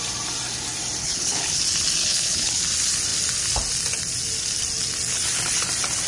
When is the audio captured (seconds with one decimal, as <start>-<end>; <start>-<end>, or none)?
0.0-1.0; 1.6-2.0; 2.6-6.1